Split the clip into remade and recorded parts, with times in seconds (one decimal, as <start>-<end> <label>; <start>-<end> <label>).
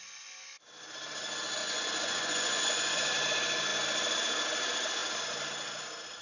0.0-1.6 recorded; 1.6-3.1 remade; 3.1-6.2 recorded